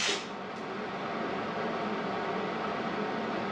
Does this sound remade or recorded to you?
recorded